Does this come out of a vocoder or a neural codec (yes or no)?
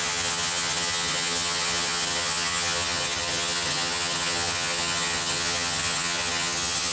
yes